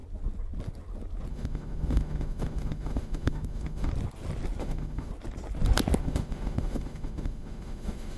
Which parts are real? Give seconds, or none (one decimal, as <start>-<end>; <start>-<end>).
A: 0.0-1.3; 3.9-4.6; 5.1-6.0